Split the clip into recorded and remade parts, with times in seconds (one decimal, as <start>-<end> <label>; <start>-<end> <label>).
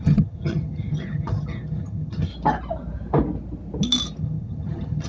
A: 0.0-2.3 remade; 2.3-4.2 recorded; 4.2-5.1 remade